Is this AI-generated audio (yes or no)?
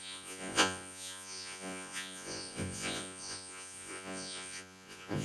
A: yes